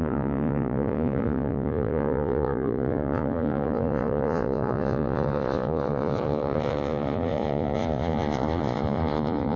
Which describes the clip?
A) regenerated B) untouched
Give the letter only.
A